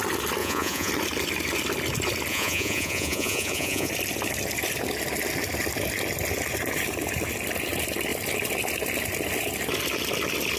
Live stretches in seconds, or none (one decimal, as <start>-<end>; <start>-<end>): 0.0-0.4; 0.9-2.3; 3.9-10.6